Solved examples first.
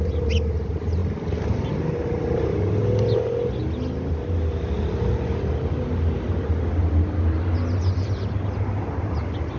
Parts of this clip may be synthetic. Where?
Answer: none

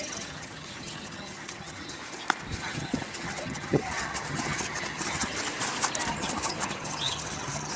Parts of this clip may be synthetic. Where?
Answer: 0.0-2.0 (vocoder, HiFi-GAN); 2.6-5.4; 6.1-7.8

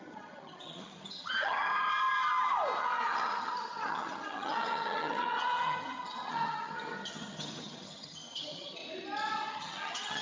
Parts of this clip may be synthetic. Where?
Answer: 0.0-1.9 (vocoder, HiFi-GAN); 2.8-8.8; 9.5-10.2

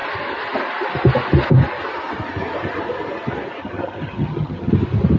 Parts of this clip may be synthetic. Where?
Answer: 3.6-4.7 (vocoder, HiFi-GAN)

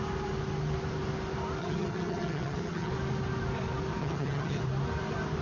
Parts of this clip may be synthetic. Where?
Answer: 1.6-2.9 (vocoder, HiFi-GAN); 4.0-4.6

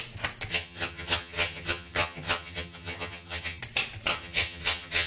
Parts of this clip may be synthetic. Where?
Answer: 0.5-3.6 (vocoder, HiFi-GAN); 4.1-5.1

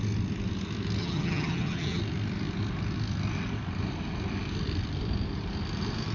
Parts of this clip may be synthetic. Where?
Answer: 1.0-2.0 (vocoder, HiFi-GAN)

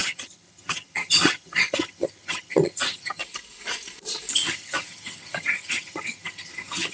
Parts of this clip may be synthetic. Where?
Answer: 0.0-3.2 (vocoder, HiFi-GAN); 4.3-6.9